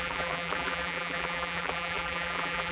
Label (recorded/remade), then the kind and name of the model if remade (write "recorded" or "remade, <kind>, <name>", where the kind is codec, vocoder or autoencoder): remade, vocoder, BigVGAN v2